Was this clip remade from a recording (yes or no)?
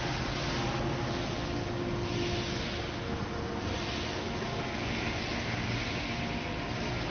no